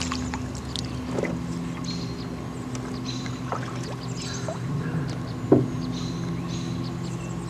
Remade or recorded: recorded